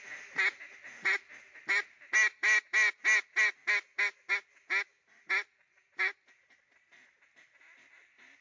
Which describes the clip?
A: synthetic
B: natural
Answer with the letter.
B